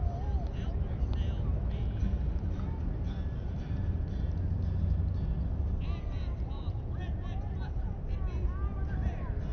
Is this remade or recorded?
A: recorded